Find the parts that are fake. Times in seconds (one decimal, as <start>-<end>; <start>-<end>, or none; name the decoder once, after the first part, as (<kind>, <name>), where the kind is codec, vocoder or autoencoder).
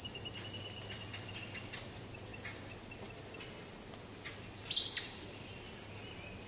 none